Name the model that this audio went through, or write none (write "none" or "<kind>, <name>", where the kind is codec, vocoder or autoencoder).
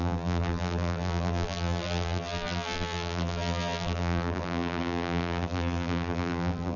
vocoder, BigVGAN v2